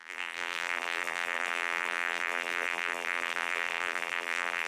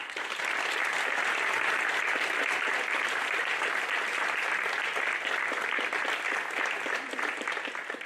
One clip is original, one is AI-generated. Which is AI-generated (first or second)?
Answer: first